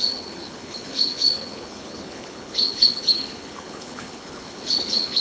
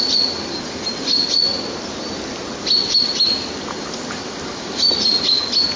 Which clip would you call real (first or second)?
second